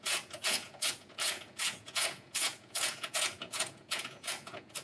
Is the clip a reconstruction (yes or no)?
yes